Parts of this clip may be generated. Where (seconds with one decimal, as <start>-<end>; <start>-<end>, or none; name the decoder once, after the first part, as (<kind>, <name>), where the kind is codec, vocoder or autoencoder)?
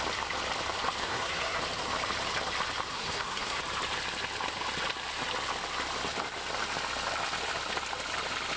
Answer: 1.0-1.6 (codec, SNAC); 2.9-3.6